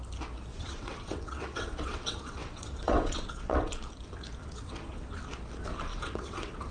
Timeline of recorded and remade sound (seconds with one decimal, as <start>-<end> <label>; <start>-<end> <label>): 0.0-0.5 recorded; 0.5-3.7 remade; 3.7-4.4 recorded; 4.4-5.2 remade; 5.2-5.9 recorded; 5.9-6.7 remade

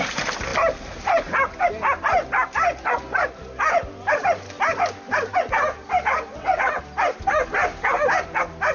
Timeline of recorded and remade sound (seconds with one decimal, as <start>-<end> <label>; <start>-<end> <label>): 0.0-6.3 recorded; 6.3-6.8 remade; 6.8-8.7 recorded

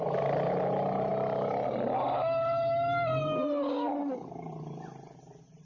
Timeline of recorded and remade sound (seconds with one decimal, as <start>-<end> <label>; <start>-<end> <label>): 0.0-5.7 recorded

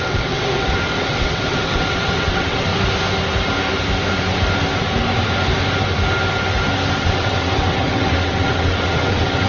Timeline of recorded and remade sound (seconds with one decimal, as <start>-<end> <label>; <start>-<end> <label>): 0.0-2.7 remade; 2.7-7.0 recorded; 7.0-9.5 remade